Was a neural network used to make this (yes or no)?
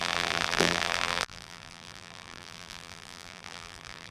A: yes